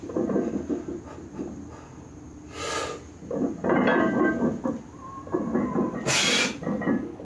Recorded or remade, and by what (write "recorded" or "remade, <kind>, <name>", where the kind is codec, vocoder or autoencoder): recorded